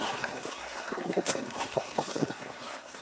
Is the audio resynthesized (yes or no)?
yes